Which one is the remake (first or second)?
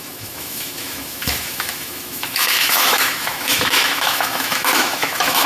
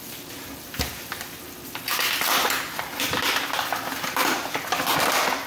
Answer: first